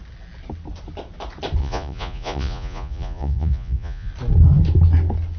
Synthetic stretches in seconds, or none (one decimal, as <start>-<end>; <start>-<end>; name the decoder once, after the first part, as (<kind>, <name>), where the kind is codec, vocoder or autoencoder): 1.6-4.1 (vocoder, Vocos)